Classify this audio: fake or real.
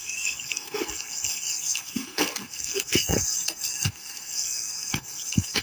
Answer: fake